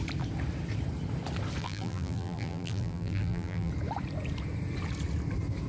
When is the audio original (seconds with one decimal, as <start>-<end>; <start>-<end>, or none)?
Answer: 0.0-1.6; 3.7-5.7